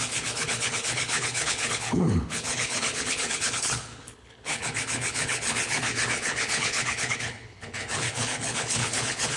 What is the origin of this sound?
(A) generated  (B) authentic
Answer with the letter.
A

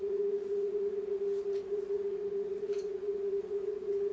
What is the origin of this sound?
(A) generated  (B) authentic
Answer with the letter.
A